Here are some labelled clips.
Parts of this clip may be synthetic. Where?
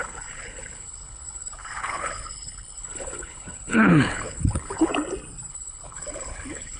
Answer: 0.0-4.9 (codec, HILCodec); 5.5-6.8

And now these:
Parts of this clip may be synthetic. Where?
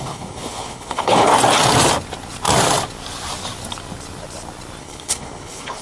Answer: 0.0-1.3 (codec, HILCodec); 4.8-5.8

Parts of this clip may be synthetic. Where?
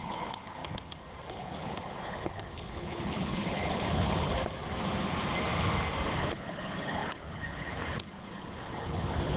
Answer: 0.0-0.6 (codec, HILCodec); 1.3-4.3; 6.2-9.4